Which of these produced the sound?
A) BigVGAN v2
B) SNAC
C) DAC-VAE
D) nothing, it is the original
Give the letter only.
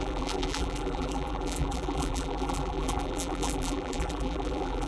A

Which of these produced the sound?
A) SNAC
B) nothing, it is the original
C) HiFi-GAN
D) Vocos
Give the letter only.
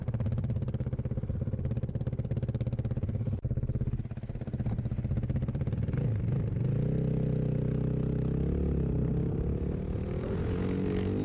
B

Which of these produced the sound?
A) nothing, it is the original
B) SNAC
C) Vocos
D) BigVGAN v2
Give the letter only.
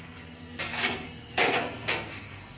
B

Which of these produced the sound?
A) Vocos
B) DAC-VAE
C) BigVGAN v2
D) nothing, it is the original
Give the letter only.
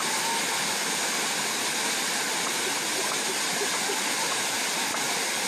D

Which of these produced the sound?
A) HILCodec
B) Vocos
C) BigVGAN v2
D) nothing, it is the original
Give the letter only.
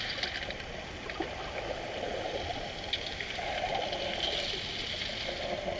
D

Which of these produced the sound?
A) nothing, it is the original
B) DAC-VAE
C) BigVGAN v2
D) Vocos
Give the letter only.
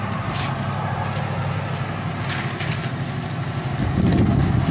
A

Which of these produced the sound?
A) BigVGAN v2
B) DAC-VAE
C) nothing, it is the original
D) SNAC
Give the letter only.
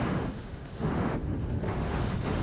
B